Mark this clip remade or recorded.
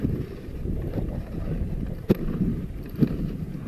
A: remade